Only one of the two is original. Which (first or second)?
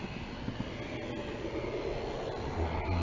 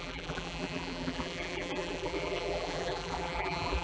first